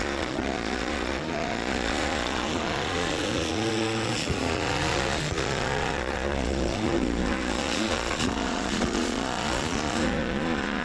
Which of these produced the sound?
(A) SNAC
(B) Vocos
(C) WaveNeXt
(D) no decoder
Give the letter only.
B